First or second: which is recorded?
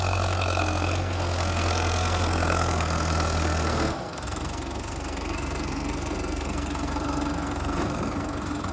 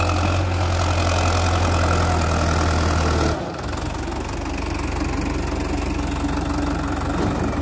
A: second